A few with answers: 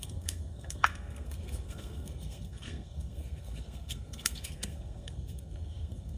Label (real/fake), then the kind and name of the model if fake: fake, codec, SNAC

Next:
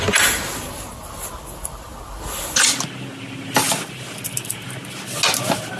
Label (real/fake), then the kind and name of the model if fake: real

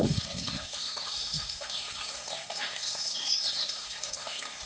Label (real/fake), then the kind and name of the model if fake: fake, codec, SNAC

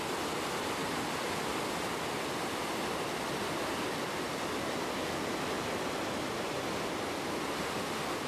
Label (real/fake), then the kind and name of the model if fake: real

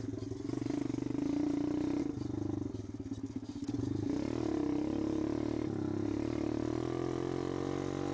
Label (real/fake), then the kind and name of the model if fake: real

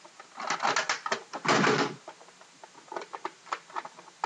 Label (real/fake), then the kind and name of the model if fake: real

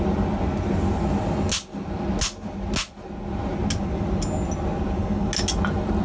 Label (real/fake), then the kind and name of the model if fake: real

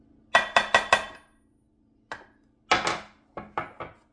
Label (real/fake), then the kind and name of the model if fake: real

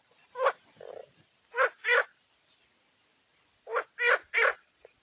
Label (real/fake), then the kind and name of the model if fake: real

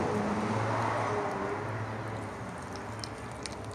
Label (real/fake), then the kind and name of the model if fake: real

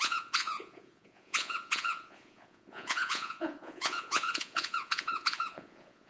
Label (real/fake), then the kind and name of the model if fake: fake, vocoder, Vocos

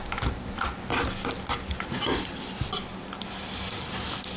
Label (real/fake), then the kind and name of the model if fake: real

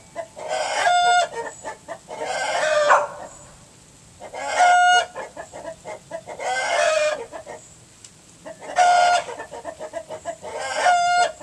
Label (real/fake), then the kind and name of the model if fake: real